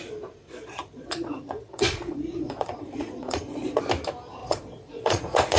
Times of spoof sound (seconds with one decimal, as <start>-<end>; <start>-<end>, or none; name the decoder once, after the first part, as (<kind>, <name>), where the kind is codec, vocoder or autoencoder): 0.4-3.8 (vocoder, Vocos); 4.4-5.6